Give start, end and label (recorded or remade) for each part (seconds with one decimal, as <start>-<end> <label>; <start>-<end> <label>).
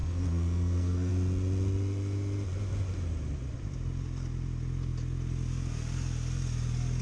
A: 0.0-1.1 remade; 1.1-7.0 recorded